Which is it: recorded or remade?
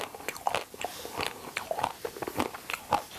recorded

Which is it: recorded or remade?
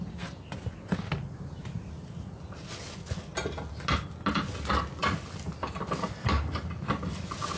recorded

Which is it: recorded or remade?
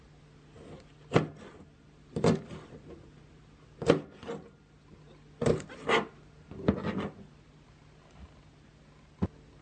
recorded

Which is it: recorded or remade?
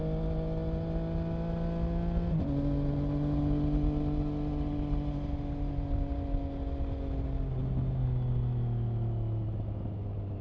recorded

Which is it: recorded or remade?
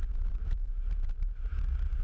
remade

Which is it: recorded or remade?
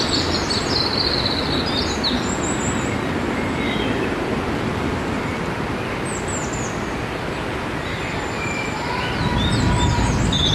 recorded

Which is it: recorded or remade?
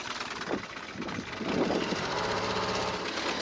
recorded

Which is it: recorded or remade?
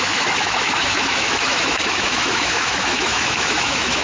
remade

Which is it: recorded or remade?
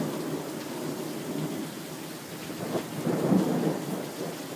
recorded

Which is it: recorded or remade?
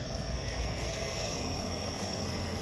remade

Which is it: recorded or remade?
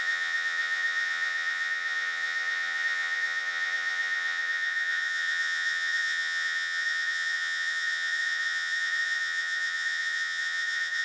remade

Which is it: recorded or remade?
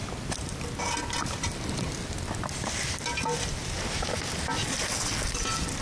recorded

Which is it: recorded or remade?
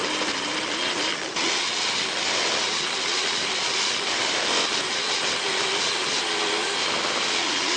recorded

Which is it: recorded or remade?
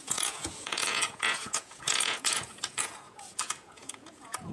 remade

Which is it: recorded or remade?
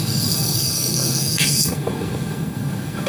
remade